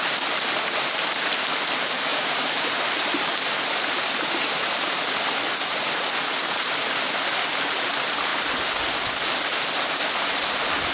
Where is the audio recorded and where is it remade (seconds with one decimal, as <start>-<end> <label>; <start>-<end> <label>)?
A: 0.0-2.1 recorded; 2.1-5.0 remade; 5.0-10.9 recorded